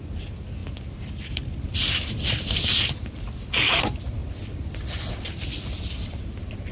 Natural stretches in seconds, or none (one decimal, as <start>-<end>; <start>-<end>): 4.2-5.6